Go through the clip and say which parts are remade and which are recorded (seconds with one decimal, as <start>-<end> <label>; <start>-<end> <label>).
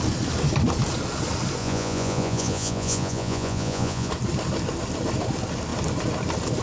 0.0-1.6 recorded; 1.6-4.1 remade; 4.1-6.6 recorded